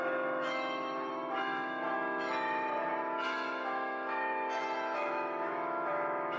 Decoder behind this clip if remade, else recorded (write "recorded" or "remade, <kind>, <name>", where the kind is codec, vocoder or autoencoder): remade, autoencoder, DAC-VAE